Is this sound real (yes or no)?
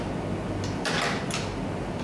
yes